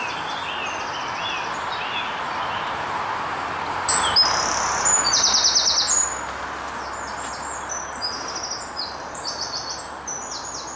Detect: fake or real real